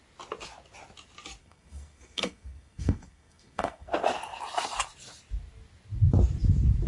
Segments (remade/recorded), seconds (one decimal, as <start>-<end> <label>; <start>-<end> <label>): 0.0-1.4 recorded; 1.4-3.9 remade; 3.9-6.9 recorded